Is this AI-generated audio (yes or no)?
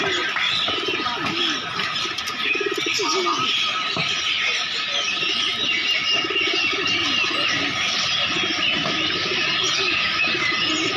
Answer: no